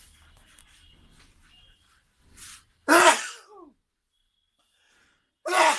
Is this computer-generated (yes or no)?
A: no